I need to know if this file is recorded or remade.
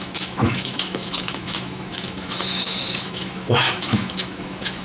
remade